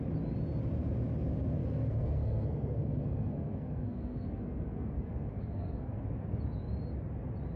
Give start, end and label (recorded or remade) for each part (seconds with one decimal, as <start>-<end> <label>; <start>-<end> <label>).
0.0-1.6 recorded; 1.6-6.0 remade; 6.0-7.6 recorded